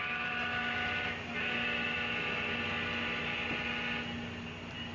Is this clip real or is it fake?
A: real